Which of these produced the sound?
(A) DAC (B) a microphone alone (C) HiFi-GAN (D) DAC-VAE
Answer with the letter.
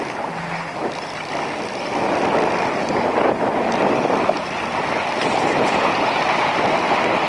B